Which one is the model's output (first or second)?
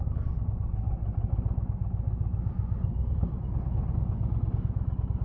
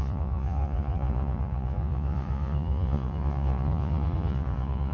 second